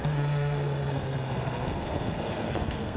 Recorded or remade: remade